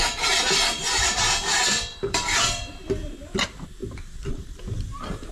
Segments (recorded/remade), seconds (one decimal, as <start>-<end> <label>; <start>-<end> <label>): 0.0-1.5 recorded; 1.5-3.1 remade; 3.1-3.8 recorded; 3.8-5.3 remade